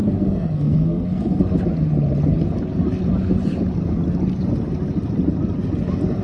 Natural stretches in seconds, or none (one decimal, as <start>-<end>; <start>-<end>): 1.6-6.2